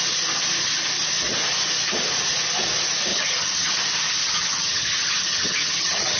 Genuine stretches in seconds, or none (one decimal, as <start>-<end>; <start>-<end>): 0.0-3.1; 3.7-4.2